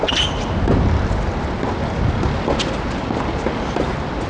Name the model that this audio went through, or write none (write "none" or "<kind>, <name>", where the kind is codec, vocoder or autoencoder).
none